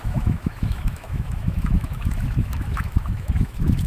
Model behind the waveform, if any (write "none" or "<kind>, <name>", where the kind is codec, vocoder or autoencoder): autoencoder, DAC-VAE